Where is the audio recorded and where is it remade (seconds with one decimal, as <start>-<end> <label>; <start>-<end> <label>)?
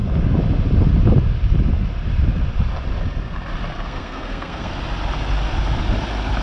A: 0.0-3.7 recorded; 3.7-4.7 remade; 4.7-6.4 recorded